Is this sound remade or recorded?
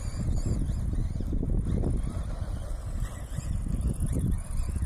recorded